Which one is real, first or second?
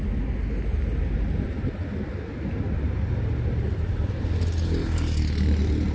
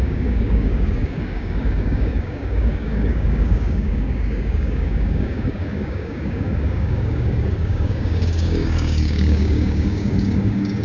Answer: first